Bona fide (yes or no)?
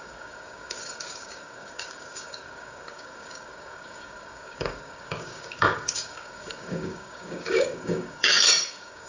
no